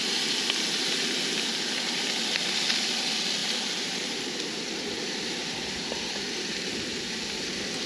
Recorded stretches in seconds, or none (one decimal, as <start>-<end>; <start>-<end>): 0.0-3.4; 6.1-7.9